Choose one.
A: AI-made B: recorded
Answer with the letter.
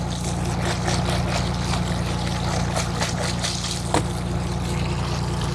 B